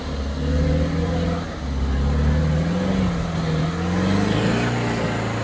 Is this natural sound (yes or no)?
yes